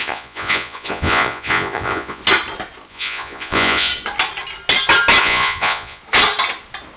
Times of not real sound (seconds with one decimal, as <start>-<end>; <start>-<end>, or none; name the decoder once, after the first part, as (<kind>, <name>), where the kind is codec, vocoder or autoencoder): 0.0-2.2 (vocoder, Vocos); 2.9-3.9; 5.2-6.0